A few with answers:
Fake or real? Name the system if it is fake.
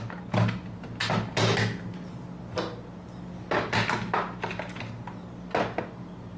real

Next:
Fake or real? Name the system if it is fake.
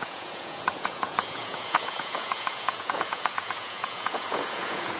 fake, vocoder, Vocos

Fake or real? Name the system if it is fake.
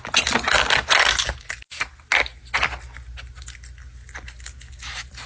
real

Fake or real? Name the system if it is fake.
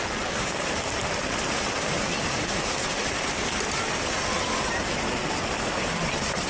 real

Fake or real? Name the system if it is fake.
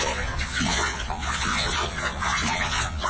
fake, vocoder, Vocos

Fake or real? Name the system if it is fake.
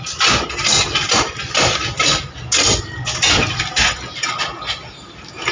real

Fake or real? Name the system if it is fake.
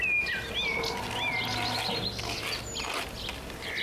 real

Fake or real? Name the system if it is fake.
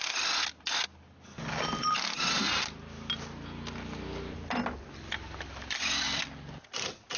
real